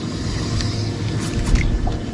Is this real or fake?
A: real